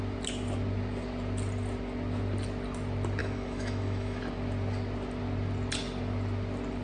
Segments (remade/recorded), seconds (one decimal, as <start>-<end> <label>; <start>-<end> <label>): 0.0-3.2 recorded; 3.2-4.2 remade; 4.2-6.8 recorded